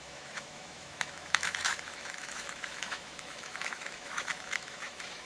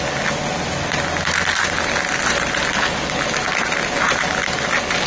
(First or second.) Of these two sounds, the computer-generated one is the first